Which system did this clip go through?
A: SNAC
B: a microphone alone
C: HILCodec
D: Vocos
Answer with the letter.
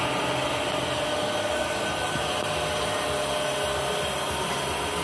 B